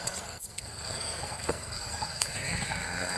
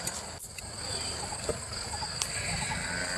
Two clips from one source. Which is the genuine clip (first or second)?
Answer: second